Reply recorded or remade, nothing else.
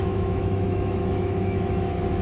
remade